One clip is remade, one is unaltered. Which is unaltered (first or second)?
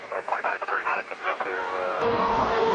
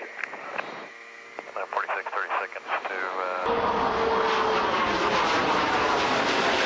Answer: second